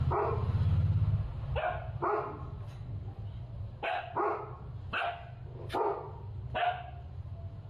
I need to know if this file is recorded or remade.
recorded